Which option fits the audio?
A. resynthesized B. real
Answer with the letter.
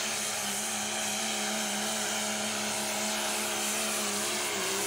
B